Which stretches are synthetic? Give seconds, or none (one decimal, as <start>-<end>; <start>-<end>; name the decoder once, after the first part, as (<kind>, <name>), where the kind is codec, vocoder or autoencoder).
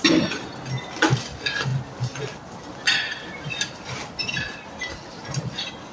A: 0.0-1.7 (vocoder, BigVGAN v2); 3.2-5.9